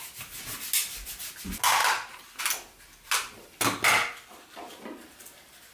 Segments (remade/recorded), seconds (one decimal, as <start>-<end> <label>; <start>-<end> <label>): 0.0-5.7 recorded